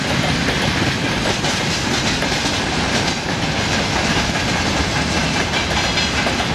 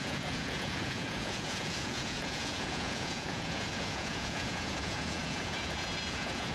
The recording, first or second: first